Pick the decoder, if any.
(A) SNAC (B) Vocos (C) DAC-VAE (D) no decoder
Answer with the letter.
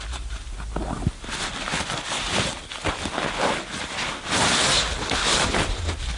D